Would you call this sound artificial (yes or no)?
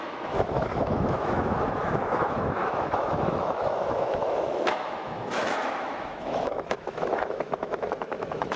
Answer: yes